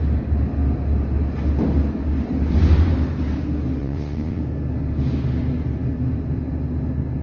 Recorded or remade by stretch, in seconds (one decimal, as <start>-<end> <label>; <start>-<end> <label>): 0.0-3.8 recorded; 3.8-4.4 remade; 4.4-7.2 recorded